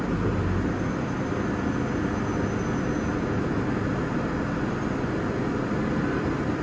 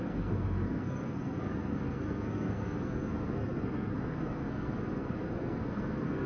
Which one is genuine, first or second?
first